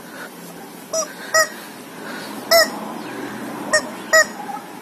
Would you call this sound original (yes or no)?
yes